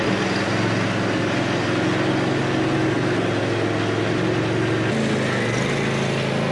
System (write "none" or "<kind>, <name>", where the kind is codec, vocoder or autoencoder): none